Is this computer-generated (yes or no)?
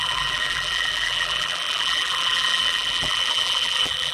yes